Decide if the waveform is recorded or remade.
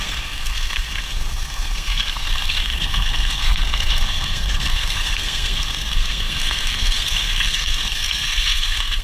remade